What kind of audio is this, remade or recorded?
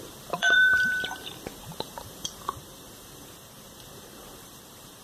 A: remade